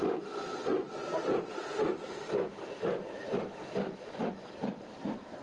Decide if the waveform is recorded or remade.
recorded